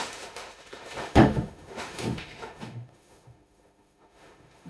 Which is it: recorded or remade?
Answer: remade